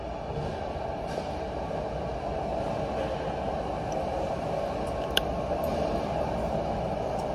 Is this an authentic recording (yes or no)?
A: yes